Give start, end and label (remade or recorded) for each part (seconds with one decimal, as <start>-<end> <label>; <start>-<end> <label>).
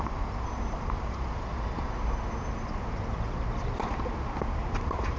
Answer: 0.0-1.5 remade; 1.5-4.6 recorded; 4.6-5.2 remade